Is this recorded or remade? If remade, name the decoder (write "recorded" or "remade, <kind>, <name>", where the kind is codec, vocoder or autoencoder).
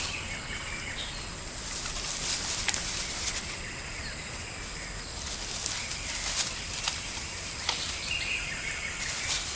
recorded